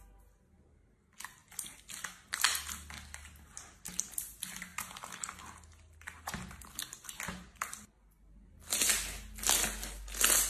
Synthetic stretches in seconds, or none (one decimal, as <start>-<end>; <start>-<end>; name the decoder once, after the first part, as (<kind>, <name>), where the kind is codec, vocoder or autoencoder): none